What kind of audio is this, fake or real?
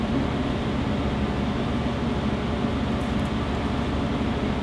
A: real